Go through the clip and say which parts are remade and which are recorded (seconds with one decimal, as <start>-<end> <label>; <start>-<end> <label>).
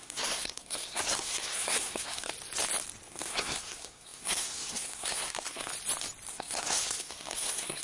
0.0-2.3 remade; 2.3-3.1 recorded; 3.1-5.7 remade; 5.7-6.3 recorded; 6.3-7.8 remade